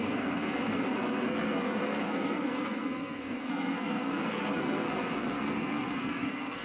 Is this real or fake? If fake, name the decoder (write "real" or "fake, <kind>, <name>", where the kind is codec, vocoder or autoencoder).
fake, codec, SNAC